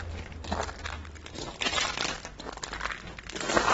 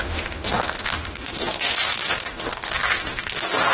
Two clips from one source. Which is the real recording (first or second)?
first